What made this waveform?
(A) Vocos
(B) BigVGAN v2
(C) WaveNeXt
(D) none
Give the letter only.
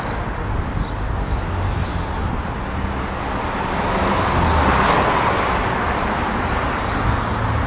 D